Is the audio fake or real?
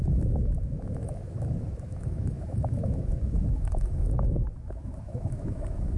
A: fake